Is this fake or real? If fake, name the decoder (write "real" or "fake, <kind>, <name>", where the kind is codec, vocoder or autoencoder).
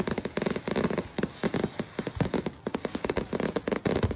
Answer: real